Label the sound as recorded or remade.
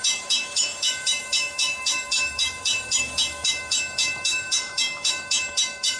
remade